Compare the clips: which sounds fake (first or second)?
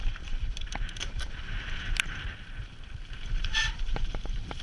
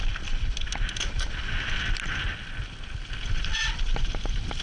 first